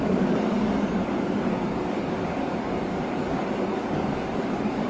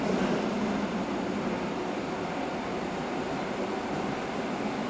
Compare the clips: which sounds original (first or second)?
second